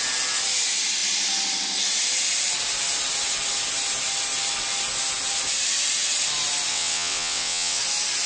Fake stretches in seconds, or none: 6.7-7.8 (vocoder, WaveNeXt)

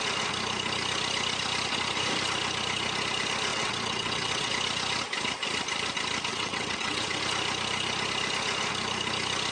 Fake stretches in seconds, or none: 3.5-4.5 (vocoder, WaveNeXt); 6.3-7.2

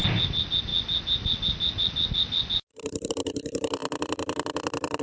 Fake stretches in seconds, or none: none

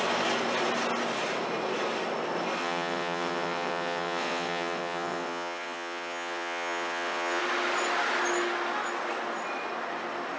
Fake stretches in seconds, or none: 2.6-7.4 (vocoder, WaveNeXt)

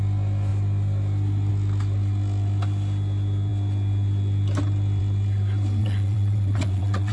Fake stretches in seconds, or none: 5.8-7.1 (vocoder, WaveNeXt)

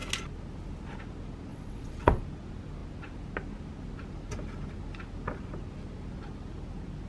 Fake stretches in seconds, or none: 1.5-2.2 (vocoder, WaveNeXt)